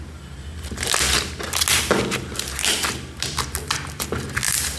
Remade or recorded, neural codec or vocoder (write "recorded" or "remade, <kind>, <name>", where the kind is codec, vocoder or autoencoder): recorded